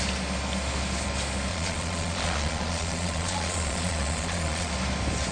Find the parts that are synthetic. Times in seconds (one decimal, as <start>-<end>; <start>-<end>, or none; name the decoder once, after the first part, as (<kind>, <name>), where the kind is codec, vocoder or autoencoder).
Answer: 1.5-4.7 (vocoder, Vocos)